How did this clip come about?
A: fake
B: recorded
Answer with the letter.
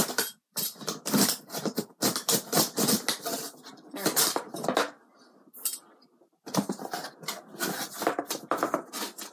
B